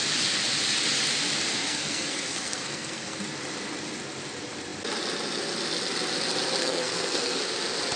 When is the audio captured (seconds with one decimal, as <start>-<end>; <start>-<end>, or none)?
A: 0.0-1.5; 3.2-6.6; 7.4-8.0